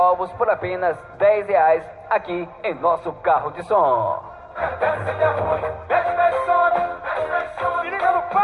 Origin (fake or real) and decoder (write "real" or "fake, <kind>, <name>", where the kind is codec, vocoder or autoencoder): real